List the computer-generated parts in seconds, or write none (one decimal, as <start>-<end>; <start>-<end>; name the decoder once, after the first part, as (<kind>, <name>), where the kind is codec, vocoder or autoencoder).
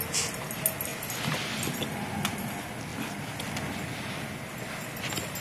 none